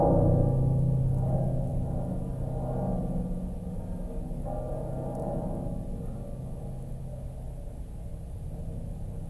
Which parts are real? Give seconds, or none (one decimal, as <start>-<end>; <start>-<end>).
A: 0.0-9.3